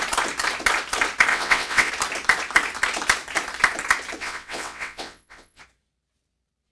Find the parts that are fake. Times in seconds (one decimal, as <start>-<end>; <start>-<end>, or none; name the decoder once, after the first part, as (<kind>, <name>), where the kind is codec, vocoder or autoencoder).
1.3-1.9 (vocoder, WaveNeXt); 4.2-5.6